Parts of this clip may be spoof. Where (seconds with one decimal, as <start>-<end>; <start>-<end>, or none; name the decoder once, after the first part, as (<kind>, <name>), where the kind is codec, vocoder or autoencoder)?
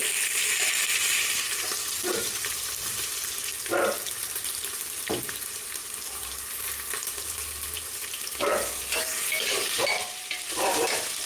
0.8-11.3 (vocoder, BigVGAN v2)